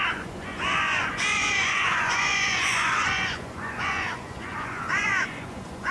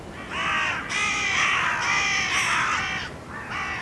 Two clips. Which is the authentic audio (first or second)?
second